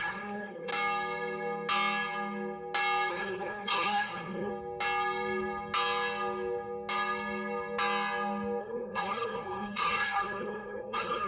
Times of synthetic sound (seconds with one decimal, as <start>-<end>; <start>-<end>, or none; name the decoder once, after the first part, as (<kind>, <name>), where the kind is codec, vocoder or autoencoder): 0.0-0.7 (codec, SNAC); 3.1-4.5; 8.6-11.3